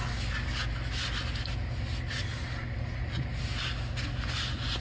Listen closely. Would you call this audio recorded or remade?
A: recorded